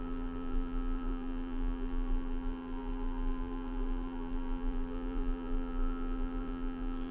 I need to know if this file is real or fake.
fake